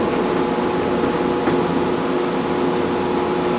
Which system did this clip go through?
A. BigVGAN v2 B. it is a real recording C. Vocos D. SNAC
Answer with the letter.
B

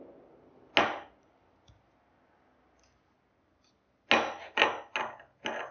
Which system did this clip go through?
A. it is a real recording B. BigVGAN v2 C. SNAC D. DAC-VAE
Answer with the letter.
A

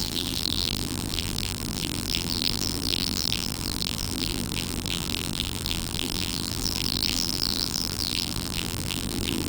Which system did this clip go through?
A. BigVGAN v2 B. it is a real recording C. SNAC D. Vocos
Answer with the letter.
A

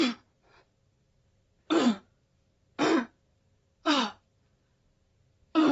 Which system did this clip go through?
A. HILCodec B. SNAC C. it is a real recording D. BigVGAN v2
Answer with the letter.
C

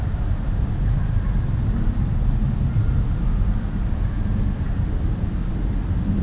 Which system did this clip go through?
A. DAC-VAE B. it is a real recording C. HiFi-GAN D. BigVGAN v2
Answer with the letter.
B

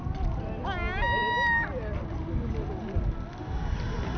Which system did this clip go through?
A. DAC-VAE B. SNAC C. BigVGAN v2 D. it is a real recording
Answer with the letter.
D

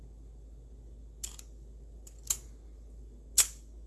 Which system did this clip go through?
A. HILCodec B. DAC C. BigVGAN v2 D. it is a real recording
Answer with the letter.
D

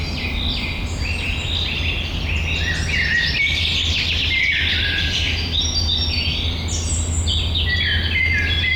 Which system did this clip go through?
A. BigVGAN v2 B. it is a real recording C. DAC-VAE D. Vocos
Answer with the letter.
B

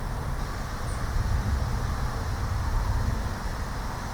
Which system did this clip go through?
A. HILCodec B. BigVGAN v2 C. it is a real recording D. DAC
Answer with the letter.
C